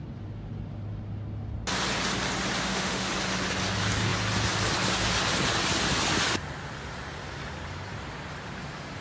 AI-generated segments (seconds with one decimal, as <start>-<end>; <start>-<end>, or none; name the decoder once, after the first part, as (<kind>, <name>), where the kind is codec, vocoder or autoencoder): 2.6-3.1 (autoencoder, DAC-VAE)